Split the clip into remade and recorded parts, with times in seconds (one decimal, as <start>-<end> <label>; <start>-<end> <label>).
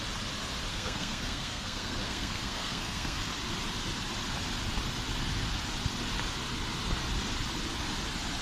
0.0-0.7 recorded; 0.7-3.3 remade; 3.3-8.4 recorded